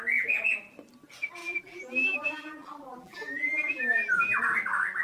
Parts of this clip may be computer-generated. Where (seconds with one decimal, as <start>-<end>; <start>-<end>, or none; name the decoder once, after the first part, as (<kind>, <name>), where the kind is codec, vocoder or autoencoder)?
1.4-4.4 (vocoder, BigVGAN v2)